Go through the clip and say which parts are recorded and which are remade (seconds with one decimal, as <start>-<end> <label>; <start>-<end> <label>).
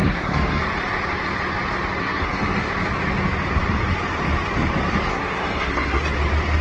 0.0-0.6 remade; 0.6-2.0 recorded; 2.0-2.7 remade; 2.7-5.1 recorded; 5.1-6.0 remade; 6.0-6.6 recorded